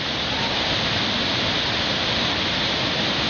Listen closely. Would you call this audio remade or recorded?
recorded